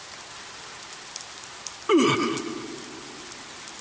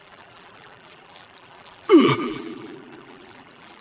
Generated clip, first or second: second